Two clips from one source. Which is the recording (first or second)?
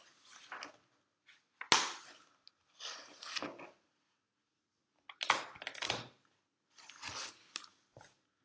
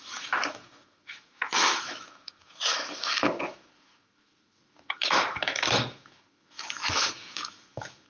first